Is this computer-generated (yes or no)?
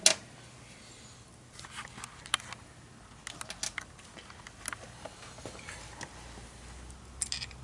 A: no